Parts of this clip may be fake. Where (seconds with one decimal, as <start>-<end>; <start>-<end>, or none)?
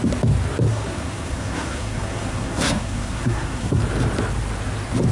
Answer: 0.7-3.8